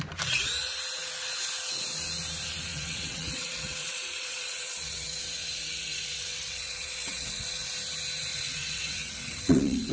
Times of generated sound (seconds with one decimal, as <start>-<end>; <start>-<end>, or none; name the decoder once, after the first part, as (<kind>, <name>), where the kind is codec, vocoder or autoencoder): 2.7-7.7 (vocoder, WaveNeXt); 8.3-9.9